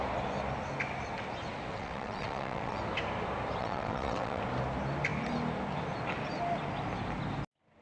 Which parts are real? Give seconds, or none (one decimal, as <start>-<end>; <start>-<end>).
0.0-1.7; 2.8-3.6; 4.4-7.8